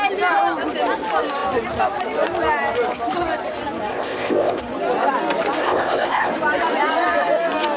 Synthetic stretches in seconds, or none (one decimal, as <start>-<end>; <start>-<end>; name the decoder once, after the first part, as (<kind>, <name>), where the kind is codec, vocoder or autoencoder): 3.9-4.6 (codec, ZipCodec); 5.6-6.3

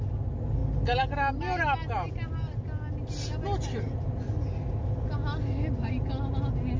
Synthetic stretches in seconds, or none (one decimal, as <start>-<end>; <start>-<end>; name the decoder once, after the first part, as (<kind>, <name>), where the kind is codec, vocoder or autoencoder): none

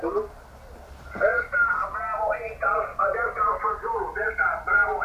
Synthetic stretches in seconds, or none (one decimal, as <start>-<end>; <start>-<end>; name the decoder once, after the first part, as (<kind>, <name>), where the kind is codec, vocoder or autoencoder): none

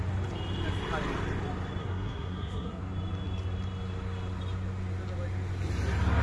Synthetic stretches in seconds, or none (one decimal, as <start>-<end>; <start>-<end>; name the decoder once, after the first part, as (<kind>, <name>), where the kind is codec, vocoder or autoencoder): 1.8-2.8 (codec, SNAC)

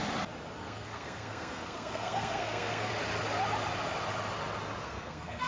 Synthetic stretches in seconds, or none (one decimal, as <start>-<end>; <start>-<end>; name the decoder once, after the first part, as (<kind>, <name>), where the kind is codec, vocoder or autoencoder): 0.6-2.9 (codec, SNAC); 4.8-5.5

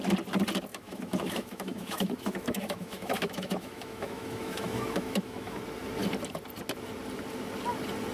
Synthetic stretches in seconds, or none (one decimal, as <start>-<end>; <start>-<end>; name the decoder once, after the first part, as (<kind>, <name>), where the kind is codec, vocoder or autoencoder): 0.7-5.6 (autoencoder, DAC-VAE)

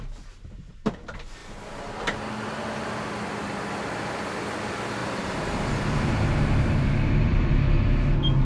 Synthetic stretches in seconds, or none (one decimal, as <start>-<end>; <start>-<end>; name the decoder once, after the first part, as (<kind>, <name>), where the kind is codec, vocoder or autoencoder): 5.0-7.5 (vocoder, BigVGAN v2)

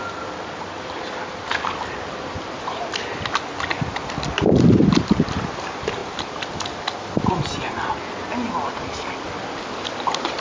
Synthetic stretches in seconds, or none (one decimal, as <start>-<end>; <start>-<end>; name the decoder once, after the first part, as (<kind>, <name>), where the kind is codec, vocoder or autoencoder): none